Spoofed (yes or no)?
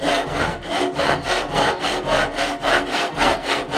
yes